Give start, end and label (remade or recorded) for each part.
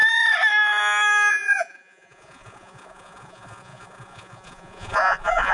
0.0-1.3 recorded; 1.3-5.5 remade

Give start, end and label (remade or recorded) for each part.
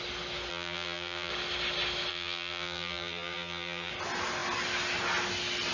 0.0-0.5 recorded; 0.5-1.3 remade; 1.3-2.1 recorded; 2.1-3.9 remade; 3.9-5.7 recorded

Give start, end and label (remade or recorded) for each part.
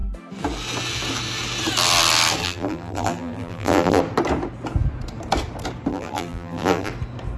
0.0-2.4 recorded; 2.4-4.0 remade; 4.0-5.9 recorded; 5.9-6.9 remade; 6.9-7.4 recorded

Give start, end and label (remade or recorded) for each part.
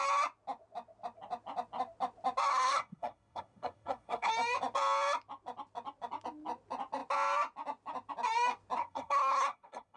0.0-2.5 recorded; 2.5-4.3 remade; 4.3-8.8 recorded; 8.8-10.0 remade